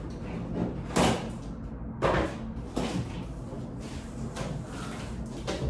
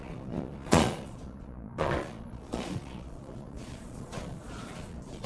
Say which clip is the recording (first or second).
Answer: first